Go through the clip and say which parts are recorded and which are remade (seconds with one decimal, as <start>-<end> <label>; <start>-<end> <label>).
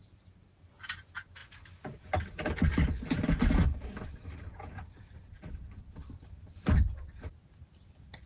0.0-8.3 recorded